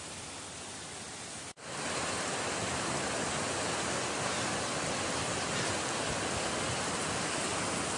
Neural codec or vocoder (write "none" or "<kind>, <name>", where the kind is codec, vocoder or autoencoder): none